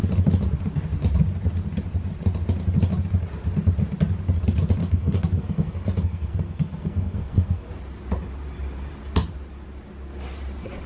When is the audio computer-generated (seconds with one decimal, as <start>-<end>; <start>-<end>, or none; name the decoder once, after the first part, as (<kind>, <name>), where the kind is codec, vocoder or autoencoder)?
4.8-7.7 (codec, SNAC)